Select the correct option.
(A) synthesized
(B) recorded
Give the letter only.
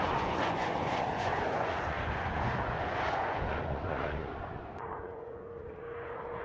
A